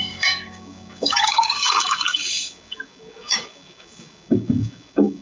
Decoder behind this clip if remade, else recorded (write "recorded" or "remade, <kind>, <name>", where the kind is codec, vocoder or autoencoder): remade, codec, DAC